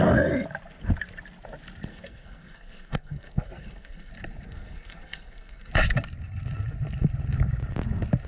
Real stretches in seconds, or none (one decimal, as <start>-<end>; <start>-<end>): 0.0-1.9; 4.1-4.5; 5.7-8.3